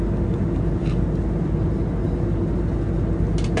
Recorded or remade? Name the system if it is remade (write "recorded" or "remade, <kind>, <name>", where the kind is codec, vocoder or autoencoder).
recorded